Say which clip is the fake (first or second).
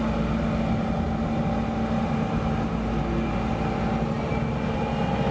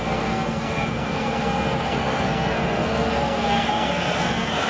second